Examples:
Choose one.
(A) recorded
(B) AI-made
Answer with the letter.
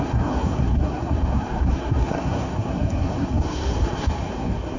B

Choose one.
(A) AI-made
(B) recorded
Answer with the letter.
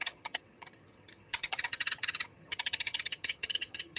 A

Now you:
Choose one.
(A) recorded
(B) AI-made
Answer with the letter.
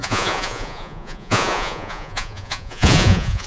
B